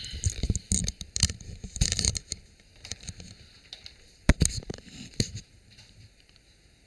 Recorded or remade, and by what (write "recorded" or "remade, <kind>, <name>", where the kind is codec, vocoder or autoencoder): remade, vocoder, BigVGAN v2